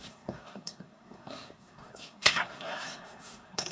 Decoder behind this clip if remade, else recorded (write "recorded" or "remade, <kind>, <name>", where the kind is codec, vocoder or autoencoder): remade, codec, SNAC